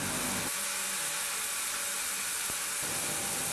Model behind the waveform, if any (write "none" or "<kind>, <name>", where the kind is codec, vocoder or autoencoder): none